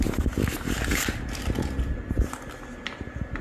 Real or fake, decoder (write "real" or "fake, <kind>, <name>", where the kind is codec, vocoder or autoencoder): real